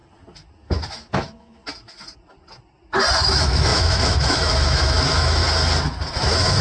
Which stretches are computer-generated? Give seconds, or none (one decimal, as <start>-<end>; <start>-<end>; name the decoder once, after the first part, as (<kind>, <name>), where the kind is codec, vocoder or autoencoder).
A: 0.9-1.6 (autoencoder, DAC-VAE); 3.1-5.4; 6.1-6.6